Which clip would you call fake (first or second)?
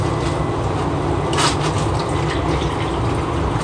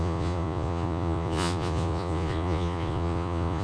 second